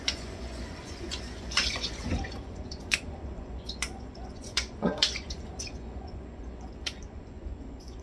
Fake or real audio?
fake